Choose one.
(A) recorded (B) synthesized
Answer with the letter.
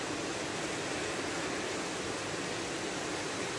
A